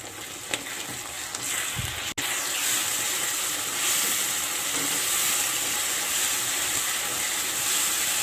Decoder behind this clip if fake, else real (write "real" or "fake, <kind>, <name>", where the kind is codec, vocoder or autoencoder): real